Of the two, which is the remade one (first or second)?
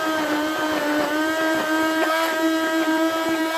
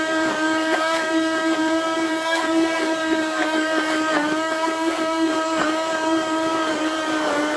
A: second